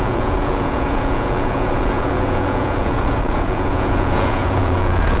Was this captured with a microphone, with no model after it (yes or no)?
no